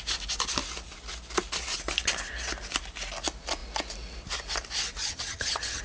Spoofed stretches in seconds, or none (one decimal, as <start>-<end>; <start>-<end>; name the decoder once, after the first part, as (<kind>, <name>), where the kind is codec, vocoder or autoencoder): 5.0-5.8 (vocoder, HiFi-GAN)